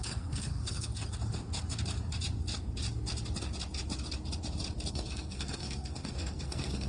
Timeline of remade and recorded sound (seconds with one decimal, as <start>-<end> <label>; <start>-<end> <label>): 0.0-0.9 remade; 0.9-4.9 recorded; 4.9-6.9 remade